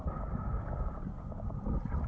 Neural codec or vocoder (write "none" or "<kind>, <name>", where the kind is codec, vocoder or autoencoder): none